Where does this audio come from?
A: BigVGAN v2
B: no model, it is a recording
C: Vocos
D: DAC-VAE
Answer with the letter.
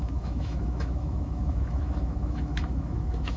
D